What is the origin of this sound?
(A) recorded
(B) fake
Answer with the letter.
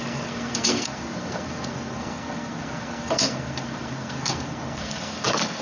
B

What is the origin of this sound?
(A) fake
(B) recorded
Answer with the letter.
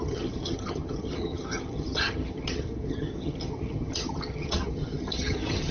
A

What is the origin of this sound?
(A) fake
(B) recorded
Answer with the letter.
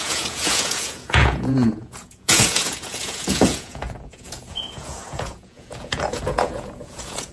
A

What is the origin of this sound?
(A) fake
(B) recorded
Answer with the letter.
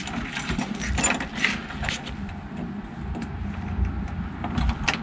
B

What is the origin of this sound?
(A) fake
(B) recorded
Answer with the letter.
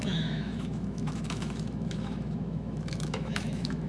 A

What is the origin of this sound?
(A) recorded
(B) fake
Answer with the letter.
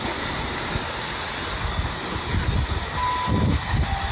A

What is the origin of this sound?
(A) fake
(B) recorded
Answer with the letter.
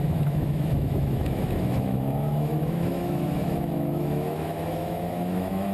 A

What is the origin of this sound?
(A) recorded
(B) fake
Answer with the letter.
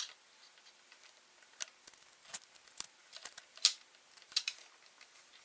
A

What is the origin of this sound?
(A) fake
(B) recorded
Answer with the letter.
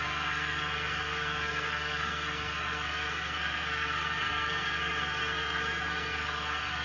A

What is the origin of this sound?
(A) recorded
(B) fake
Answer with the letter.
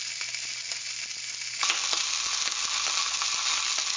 A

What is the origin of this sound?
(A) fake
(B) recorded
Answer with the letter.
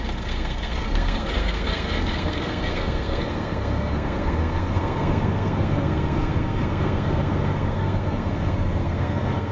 A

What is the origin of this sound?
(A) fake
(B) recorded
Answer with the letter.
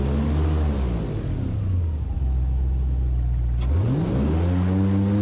B